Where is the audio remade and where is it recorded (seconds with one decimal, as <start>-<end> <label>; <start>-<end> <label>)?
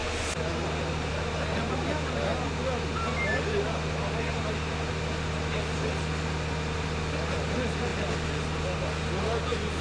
0.0-9.8 recorded